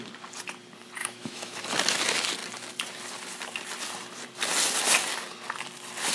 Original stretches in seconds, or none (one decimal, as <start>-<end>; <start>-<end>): 0.0-1.0; 1.6-6.1